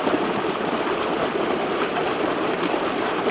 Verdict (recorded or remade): recorded